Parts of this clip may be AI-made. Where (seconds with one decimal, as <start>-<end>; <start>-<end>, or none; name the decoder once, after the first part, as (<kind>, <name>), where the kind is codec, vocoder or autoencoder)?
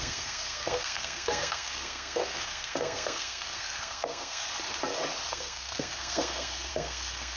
0.0-4.5 (codec, SNAC); 5.3-7.4